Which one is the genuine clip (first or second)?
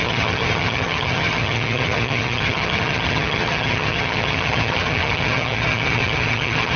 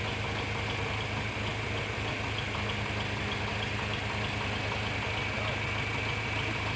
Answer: second